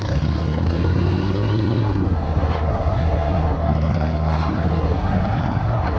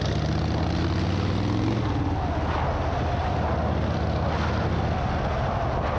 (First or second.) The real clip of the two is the second